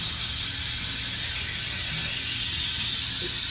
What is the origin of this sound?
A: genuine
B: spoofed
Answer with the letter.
A